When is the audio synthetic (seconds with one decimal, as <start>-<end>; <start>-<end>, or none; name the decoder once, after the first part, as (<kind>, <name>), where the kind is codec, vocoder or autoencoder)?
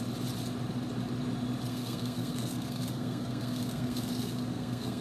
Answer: 1.7-5.0 (codec, SNAC)